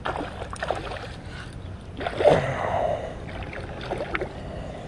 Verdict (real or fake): real